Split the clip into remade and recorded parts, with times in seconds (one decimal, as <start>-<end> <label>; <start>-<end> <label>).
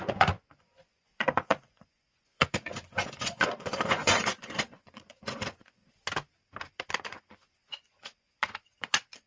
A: 0.0-5.8 remade; 5.8-6.9 recorded; 6.9-9.3 remade